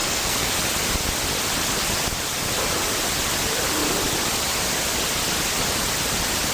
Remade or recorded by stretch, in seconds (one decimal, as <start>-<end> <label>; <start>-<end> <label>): 0.0-0.5 remade; 0.5-6.5 recorded